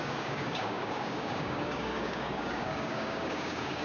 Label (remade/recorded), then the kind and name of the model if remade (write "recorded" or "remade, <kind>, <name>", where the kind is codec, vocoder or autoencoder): remade, codec, DAC